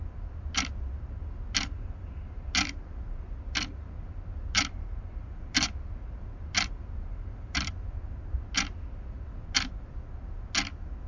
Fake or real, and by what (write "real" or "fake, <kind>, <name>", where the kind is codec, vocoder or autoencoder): real